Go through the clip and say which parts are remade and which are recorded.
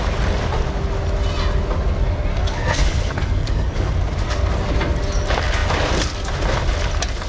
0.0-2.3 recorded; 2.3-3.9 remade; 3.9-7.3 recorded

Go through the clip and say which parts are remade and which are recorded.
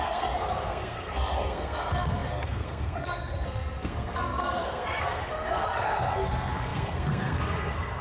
0.0-8.0 remade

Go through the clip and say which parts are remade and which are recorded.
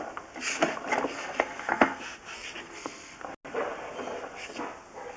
0.0-1.1 recorded; 1.1-2.0 remade; 2.0-2.6 recorded; 2.6-3.2 remade; 3.2-5.2 recorded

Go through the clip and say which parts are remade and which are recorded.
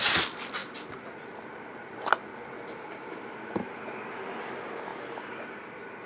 0.0-6.1 recorded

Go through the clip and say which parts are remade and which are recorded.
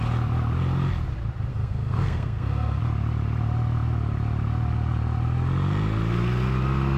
0.0-1.5 recorded; 1.5-2.8 remade; 2.8-7.0 recorded